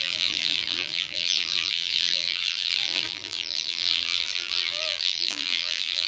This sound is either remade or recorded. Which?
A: remade